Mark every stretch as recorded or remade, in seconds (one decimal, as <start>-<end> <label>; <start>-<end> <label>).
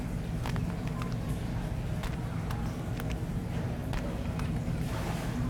0.0-0.9 remade; 0.9-3.3 recorded; 3.3-5.5 remade